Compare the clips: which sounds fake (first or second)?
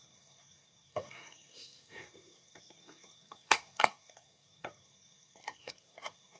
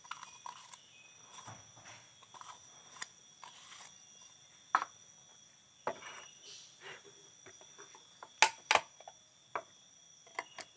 first